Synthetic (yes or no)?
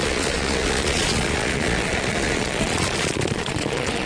yes